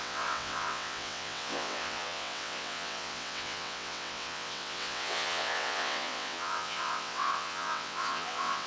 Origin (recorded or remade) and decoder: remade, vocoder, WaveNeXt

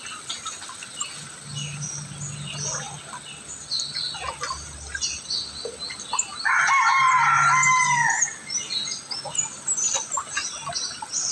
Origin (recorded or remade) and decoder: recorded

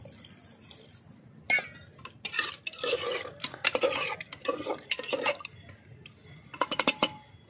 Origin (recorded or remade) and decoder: recorded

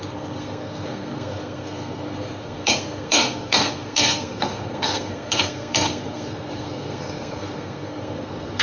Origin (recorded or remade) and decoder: remade, codec, SNAC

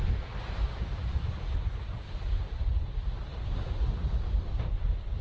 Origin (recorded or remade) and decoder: recorded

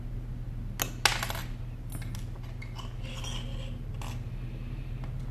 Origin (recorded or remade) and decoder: recorded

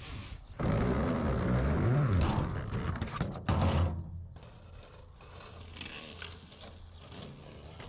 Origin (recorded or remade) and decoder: recorded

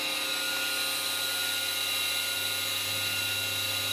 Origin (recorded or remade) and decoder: recorded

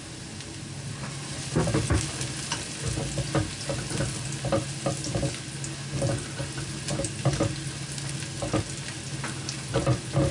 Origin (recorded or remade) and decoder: recorded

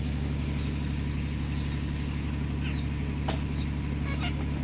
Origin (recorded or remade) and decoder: recorded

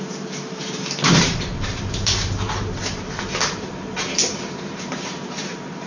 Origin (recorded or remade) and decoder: remade, vocoder, BigVGAN v2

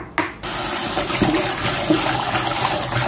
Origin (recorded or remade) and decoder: recorded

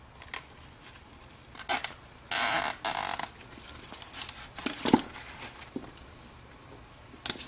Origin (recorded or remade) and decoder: recorded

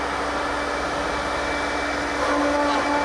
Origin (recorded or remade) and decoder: recorded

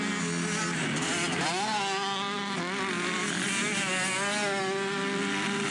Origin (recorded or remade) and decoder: recorded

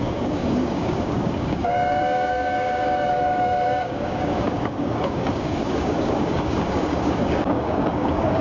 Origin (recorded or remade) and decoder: remade, codec, DAC